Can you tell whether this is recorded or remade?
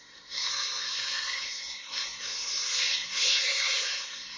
remade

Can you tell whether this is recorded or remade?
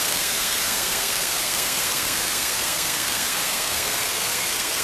remade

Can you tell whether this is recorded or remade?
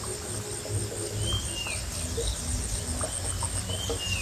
recorded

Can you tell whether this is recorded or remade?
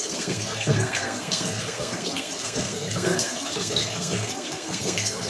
remade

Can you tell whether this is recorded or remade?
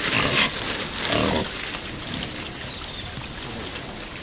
recorded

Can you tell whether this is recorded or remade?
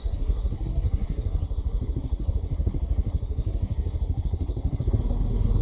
remade